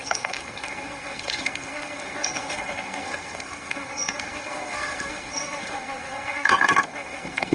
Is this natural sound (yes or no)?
no